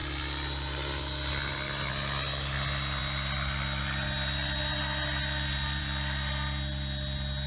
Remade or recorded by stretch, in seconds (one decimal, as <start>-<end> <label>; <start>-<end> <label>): 0.0-7.5 recorded